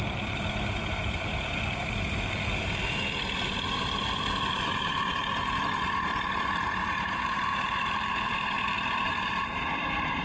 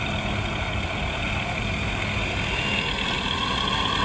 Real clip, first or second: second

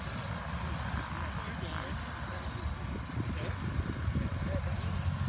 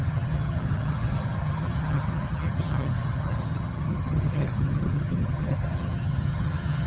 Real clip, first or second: first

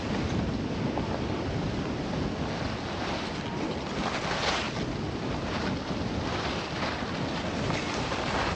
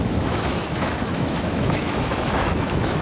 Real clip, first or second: first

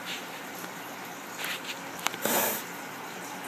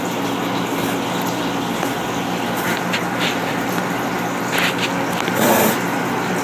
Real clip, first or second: second